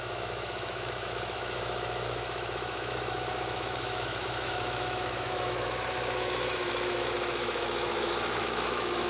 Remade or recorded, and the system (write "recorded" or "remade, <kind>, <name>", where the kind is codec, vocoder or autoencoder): remade, autoencoder, DAC-VAE